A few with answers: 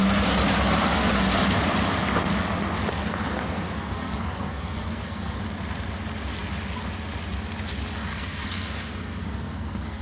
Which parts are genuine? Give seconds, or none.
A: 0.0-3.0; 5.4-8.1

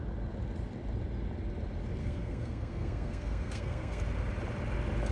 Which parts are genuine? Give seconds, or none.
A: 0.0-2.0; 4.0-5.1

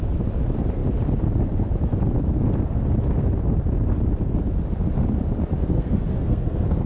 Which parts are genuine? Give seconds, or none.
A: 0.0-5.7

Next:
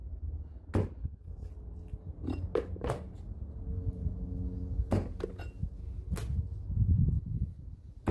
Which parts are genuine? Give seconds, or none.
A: 0.0-1.0; 1.5-8.1

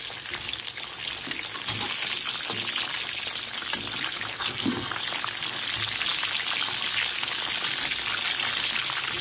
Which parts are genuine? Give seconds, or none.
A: 0.0-4.3; 5.0-9.2

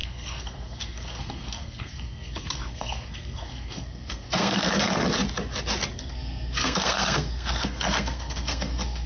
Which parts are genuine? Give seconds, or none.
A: 4.9-6.0

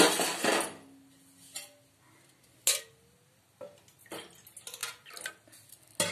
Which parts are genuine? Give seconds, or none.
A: 0.0-6.1

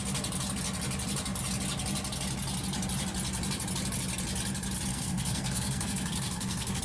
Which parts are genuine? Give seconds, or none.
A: 0.0-4.9